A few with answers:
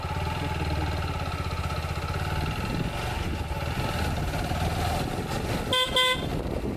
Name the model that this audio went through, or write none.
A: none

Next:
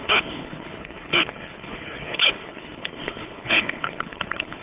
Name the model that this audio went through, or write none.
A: codec, HILCodec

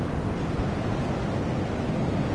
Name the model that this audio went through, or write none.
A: none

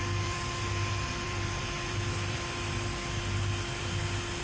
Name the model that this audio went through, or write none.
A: vocoder, BigVGAN v2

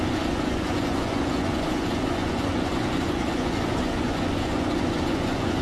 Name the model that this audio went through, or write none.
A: vocoder, Vocos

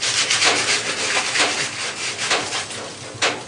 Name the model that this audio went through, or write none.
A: none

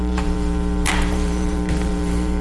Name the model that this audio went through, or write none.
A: vocoder, BigVGAN v2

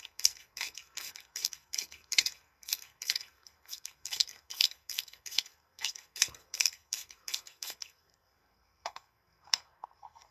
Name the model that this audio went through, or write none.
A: codec, SNAC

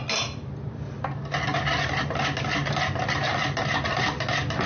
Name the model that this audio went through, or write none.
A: none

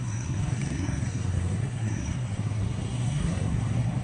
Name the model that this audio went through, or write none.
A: codec, SNAC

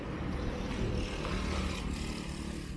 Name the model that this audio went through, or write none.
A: none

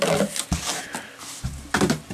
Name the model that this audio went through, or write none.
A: none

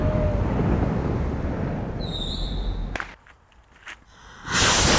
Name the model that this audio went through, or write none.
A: none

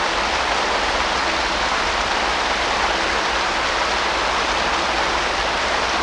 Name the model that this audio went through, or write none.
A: none